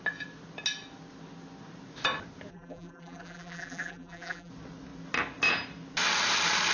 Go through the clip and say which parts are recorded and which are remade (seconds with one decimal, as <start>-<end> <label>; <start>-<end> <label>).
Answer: 0.0-2.5 recorded; 2.5-4.5 remade; 4.5-6.7 recorded